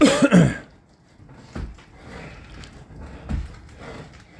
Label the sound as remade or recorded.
recorded